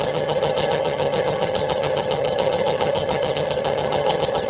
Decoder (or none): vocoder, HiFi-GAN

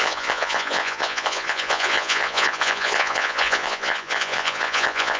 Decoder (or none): vocoder, Vocos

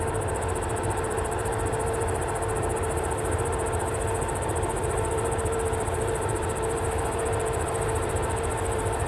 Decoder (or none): vocoder, BigVGAN v2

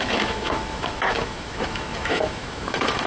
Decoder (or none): autoencoder, DAC-VAE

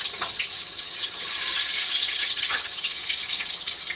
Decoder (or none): vocoder, HiFi-GAN